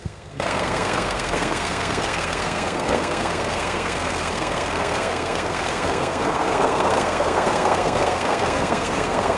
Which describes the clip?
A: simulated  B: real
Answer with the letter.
A